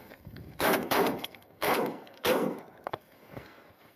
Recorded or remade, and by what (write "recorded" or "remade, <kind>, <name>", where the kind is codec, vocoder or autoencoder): remade, codec, SNAC